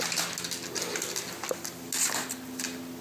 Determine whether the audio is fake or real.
real